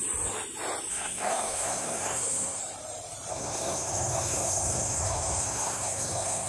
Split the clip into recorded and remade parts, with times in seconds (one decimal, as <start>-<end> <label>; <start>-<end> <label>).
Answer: 0.0-0.9 recorded; 0.9-2.6 remade; 2.6-3.3 recorded; 3.3-6.5 remade